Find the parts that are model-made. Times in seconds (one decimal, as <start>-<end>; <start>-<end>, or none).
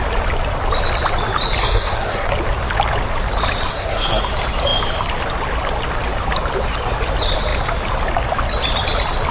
1.6-2.3; 3.7-4.2